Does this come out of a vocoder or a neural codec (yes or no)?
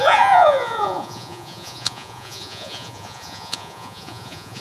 yes